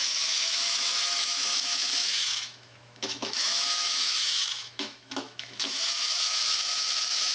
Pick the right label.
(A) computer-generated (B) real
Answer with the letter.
A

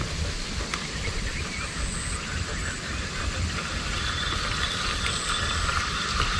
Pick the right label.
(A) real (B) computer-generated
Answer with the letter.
A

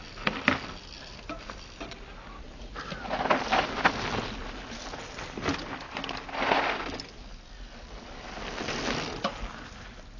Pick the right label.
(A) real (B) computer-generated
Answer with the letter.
A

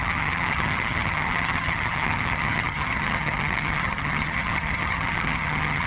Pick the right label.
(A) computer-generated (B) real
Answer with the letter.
A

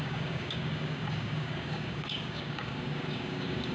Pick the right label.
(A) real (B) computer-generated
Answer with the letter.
B